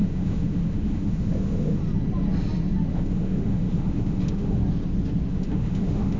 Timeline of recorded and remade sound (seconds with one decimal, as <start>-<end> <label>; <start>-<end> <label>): 0.0-1.8 remade; 1.8-2.9 recorded; 2.9-4.6 remade; 4.6-5.3 recorded; 5.3-6.2 remade